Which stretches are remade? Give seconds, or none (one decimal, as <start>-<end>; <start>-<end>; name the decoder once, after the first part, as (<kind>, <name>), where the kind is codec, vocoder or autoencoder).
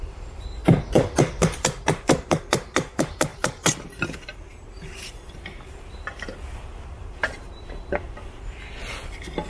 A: 0.0-9.5 (vocoder, BigVGAN v2)